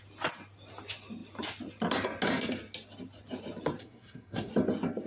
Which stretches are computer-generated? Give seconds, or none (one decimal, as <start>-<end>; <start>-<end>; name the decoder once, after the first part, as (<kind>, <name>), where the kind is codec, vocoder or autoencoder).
3.8-4.5 (codec, SNAC)